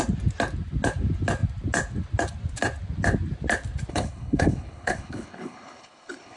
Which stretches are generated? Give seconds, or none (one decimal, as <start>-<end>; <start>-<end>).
3.9-6.4